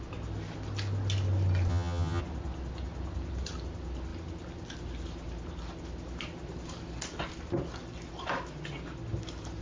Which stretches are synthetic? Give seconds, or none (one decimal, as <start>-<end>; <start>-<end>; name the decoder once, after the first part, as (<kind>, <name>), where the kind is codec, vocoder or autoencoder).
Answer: 1.7-2.2 (vocoder, HiFi-GAN)